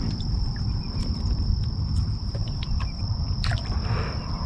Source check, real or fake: fake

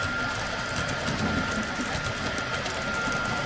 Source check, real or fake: real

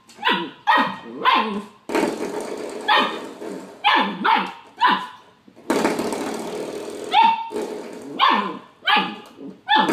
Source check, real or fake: real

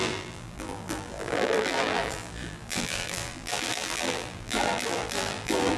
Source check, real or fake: fake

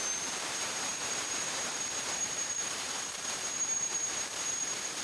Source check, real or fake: fake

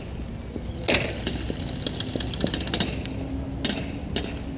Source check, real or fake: real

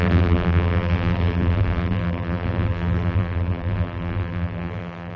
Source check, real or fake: fake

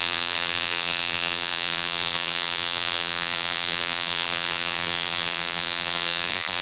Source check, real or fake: fake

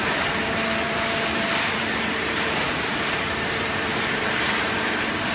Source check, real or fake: fake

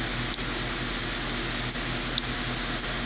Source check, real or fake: real